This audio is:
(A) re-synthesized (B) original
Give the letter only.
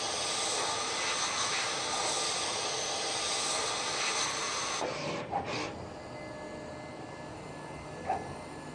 B